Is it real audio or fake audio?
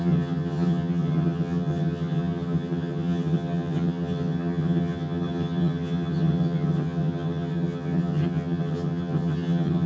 fake